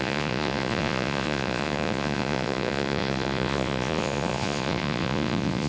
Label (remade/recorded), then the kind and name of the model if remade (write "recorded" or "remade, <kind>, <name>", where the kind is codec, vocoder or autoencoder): remade, vocoder, Vocos